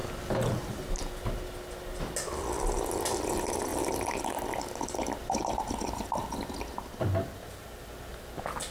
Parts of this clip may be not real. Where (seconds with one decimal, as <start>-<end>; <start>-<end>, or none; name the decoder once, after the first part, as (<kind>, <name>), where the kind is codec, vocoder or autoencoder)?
none